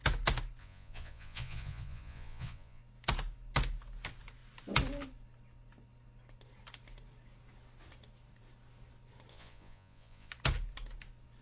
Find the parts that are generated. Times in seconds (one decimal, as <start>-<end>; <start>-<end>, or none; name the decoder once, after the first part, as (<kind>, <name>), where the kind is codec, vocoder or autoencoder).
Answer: 0.6-2.8 (vocoder, Vocos); 9.3-10.3